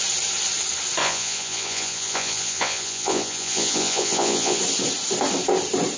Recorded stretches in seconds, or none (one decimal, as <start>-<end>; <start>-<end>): 0.0-1.0; 4.6-6.0